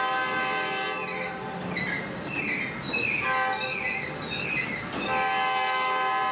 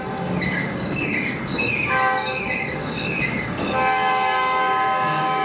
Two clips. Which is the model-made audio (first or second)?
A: second